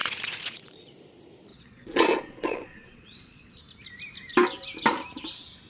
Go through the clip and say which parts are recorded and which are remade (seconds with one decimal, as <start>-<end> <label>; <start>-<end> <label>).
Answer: 0.0-0.9 remade; 0.9-1.5 recorded; 1.5-3.6 remade; 3.6-5.7 recorded